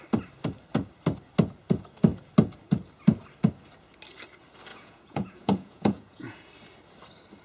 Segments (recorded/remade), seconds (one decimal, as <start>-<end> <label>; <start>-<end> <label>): 0.0-4.7 recorded; 4.7-6.5 remade; 6.5-7.4 recorded